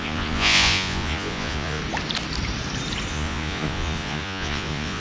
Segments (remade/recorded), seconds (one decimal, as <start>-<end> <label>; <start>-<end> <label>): 0.0-1.8 remade; 1.8-3.1 recorded; 3.1-5.0 remade